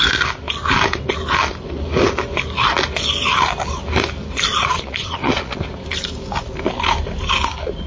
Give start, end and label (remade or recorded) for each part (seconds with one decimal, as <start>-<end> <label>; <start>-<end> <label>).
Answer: 0.0-4.5 recorded; 4.5-5.6 remade; 5.6-7.9 recorded